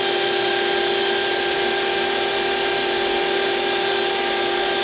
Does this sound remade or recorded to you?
recorded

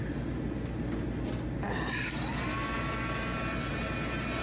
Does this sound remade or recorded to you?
recorded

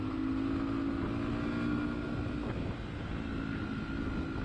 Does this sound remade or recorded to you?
recorded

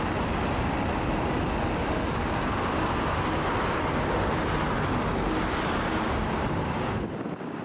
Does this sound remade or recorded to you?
recorded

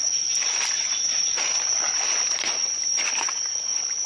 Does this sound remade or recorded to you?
recorded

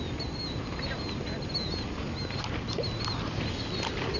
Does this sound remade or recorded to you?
recorded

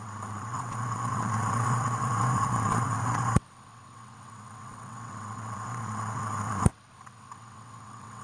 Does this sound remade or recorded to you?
remade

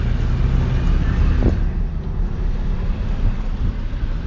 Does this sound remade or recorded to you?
recorded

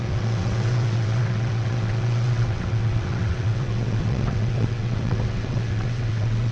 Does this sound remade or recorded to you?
remade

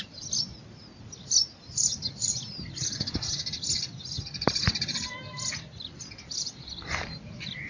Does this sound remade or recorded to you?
recorded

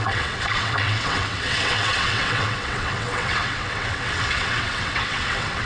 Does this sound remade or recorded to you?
remade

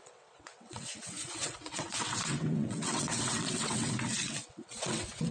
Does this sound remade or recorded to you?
remade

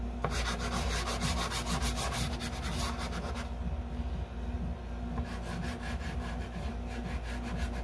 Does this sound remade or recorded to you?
recorded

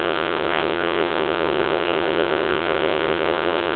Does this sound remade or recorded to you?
remade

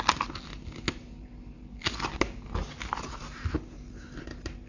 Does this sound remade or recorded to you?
recorded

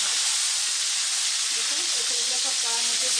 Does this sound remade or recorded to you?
recorded